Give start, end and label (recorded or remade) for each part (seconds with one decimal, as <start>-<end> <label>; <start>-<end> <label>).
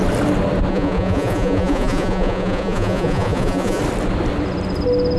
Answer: 0.0-0.7 recorded; 0.7-3.8 remade; 3.8-5.2 recorded